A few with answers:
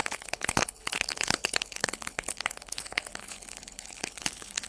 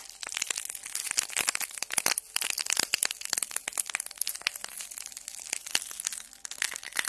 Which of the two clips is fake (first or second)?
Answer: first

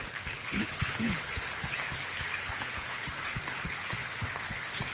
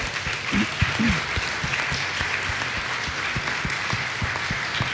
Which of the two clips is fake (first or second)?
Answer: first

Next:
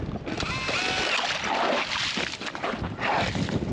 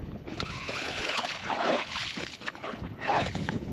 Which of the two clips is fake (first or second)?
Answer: second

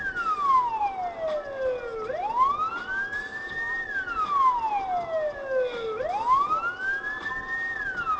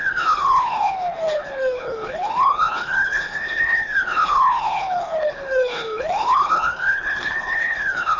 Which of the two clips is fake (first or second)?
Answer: second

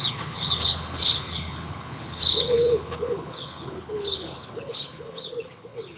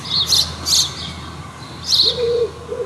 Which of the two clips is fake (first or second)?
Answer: first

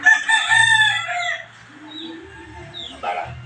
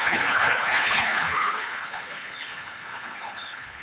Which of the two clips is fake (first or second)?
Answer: second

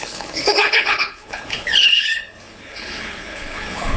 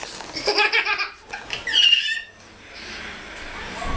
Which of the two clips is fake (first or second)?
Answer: first